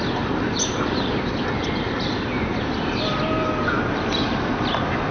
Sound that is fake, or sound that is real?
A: real